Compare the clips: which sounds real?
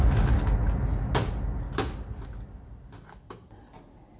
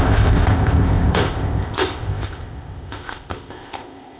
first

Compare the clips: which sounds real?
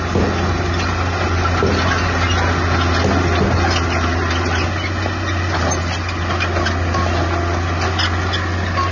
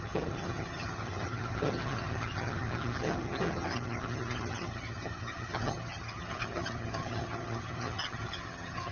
first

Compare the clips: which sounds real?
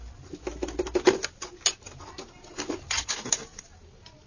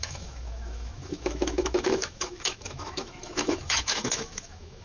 first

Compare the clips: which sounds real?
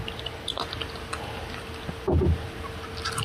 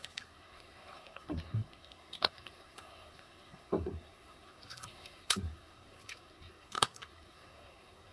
first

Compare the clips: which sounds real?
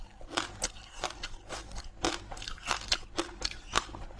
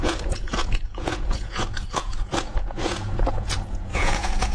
first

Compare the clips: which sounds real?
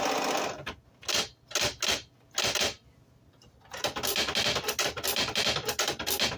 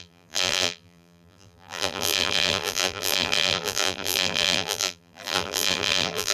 first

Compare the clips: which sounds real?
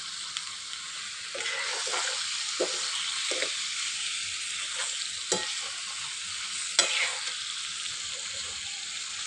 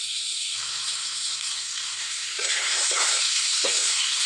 first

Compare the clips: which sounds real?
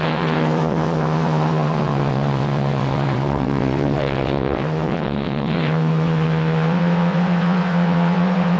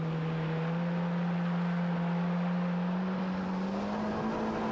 second